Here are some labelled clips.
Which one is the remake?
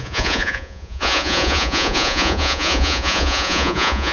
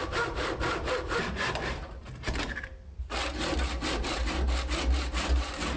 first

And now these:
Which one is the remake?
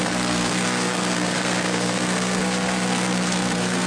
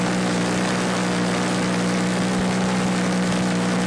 first